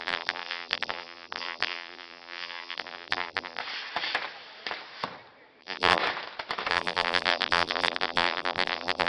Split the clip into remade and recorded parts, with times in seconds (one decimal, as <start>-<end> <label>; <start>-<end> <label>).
0.0-3.6 remade; 3.6-5.6 recorded; 5.6-6.0 remade; 6.0-6.7 recorded; 6.7-9.1 remade